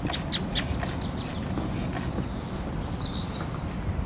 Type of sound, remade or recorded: recorded